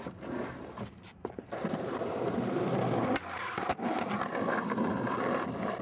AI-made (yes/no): no